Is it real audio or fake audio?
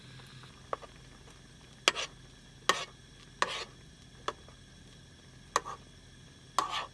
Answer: real